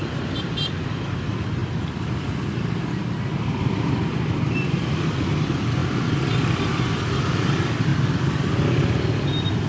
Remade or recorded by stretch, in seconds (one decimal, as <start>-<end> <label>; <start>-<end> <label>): 0.0-1.6 remade; 1.6-3.4 recorded; 3.4-5.8 remade; 5.8-6.8 recorded; 6.8-7.9 remade; 7.9-9.0 recorded; 9.0-9.7 remade